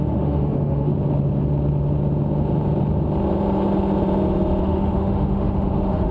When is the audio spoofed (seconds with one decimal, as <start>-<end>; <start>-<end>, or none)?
0.0-0.9; 4.6-6.1